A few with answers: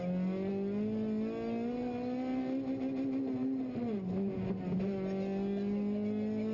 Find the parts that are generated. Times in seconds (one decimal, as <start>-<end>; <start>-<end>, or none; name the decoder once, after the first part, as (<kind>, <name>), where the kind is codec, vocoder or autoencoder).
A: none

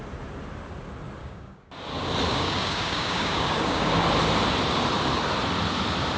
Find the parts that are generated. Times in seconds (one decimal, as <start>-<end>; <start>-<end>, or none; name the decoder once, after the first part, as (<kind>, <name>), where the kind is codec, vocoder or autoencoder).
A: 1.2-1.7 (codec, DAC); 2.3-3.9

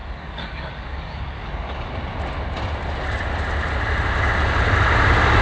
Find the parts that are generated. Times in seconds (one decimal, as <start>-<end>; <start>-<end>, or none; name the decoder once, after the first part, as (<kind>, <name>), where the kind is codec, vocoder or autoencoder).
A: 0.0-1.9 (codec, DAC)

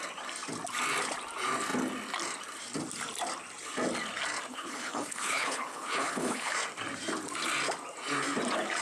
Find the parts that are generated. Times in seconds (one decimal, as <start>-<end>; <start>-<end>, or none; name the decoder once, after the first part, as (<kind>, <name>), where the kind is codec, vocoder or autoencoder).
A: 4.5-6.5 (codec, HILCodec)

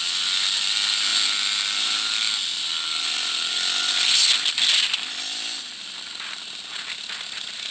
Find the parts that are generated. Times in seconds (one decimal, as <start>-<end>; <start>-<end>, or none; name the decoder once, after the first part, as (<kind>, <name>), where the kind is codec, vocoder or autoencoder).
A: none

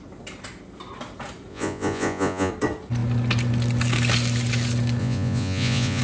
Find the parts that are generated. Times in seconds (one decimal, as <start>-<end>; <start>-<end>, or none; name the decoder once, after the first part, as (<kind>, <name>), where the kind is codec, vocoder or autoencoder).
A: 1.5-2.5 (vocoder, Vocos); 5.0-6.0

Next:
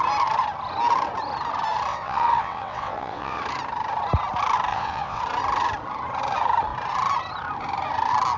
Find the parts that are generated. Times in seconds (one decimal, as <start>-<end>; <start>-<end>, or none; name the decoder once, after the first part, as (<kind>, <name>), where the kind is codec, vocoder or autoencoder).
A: 1.9-3.4 (vocoder, WaveNeXt); 4.7-5.2